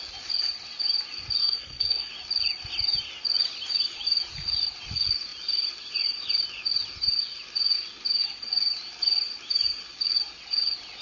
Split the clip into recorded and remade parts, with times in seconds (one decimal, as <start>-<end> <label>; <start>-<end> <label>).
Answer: 0.0-1.4 recorded; 1.4-2.1 remade; 2.1-11.0 recorded